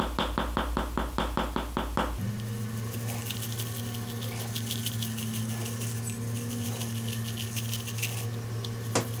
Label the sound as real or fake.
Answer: real